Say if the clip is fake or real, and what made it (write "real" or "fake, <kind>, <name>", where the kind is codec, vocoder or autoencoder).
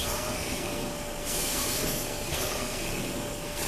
fake, codec, SNAC